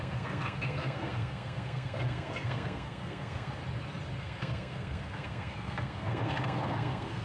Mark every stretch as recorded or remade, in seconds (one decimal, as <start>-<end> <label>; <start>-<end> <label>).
0.0-3.6 remade; 3.6-4.2 recorded; 4.2-7.2 remade